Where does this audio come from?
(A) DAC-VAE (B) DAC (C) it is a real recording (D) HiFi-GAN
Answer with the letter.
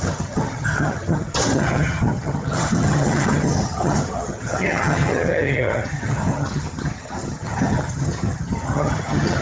D